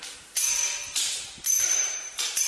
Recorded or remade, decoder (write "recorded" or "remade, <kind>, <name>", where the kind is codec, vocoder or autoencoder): remade, vocoder, BigVGAN v2